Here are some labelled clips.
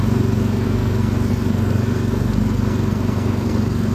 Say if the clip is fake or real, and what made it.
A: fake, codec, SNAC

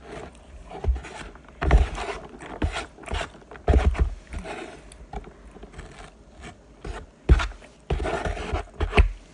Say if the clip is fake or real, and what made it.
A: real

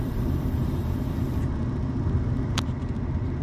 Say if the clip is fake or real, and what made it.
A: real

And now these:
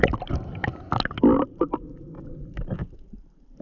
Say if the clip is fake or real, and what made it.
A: real